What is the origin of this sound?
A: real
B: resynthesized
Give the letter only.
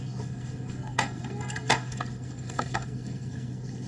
B